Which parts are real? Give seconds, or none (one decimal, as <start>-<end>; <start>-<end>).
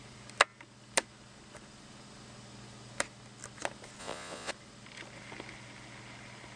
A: 0.0-4.0; 4.5-6.6